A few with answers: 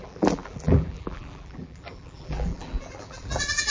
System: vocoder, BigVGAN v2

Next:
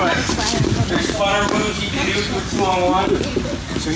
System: none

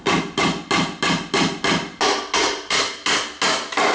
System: none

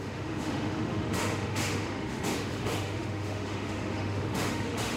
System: autoencoder, DAC-VAE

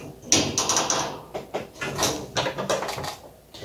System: none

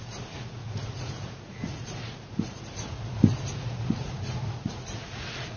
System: vocoder, Vocos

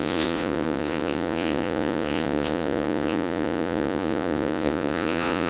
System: vocoder, Vocos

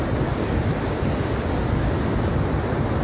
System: none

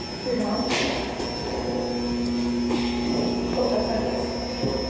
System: none